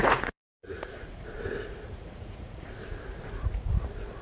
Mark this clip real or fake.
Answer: fake